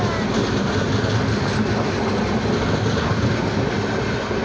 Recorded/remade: recorded